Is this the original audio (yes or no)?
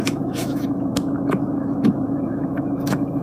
no